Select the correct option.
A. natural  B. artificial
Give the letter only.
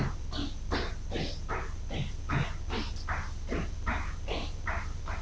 A